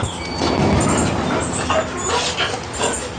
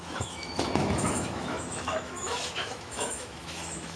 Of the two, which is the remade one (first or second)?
second